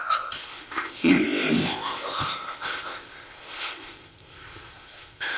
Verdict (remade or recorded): remade